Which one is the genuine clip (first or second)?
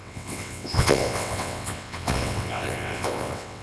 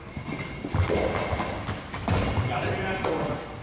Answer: second